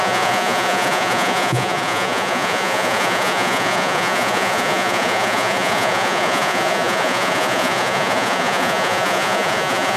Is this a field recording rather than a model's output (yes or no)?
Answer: no